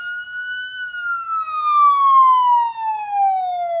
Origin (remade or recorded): recorded